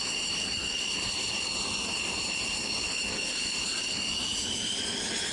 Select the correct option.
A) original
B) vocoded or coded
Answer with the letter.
A